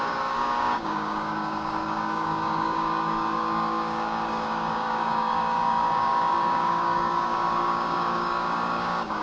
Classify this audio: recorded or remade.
remade